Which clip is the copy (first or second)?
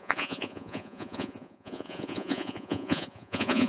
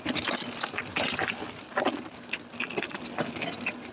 first